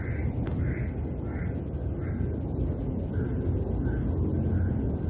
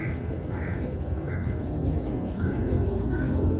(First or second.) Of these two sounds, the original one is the first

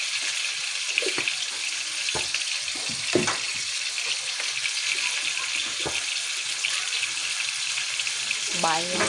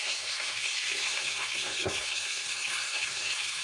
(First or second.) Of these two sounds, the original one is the first